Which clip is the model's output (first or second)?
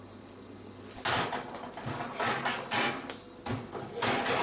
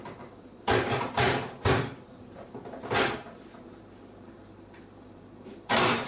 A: second